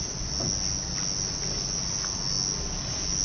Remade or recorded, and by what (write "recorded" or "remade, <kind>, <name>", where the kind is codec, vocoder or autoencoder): recorded